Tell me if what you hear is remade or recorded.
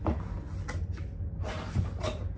recorded